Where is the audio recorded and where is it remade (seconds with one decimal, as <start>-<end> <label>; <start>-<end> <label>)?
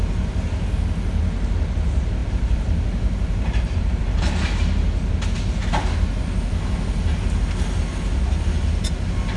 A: 0.0-2.2 recorded; 2.2-4.2 remade; 4.2-9.4 recorded